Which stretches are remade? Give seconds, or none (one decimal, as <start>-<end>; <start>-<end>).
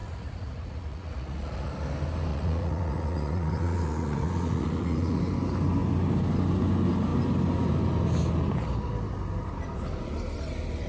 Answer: 0.0-1.7; 2.3-5.2